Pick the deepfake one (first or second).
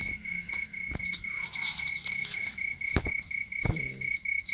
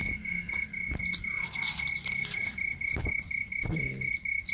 first